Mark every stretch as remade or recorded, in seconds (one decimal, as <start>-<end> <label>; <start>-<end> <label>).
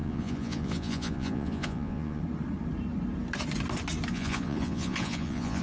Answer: 0.0-2.2 remade; 2.2-4.1 recorded; 4.1-5.6 remade